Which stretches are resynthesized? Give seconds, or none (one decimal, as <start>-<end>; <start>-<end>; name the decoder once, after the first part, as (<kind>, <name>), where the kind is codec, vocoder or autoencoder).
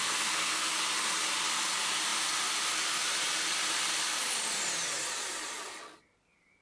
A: 0.0-0.7 (codec, SNAC)